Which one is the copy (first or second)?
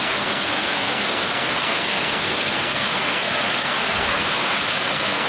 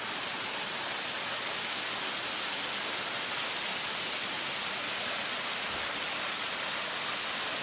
first